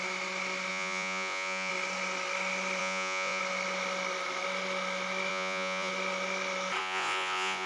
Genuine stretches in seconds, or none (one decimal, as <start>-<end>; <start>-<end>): 0.0-0.7; 1.7-2.8; 3.4-5.3; 5.9-6.8